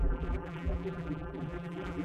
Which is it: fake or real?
fake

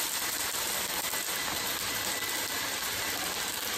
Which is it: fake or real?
fake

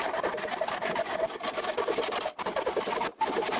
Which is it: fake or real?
fake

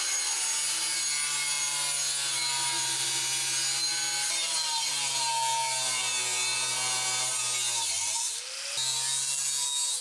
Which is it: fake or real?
real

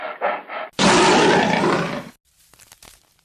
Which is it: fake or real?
real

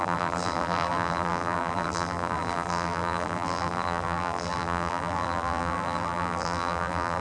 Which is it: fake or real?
fake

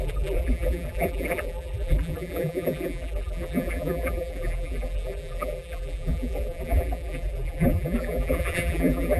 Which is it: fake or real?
fake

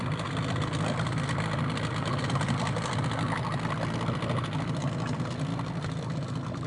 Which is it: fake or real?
fake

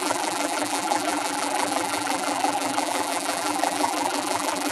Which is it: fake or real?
fake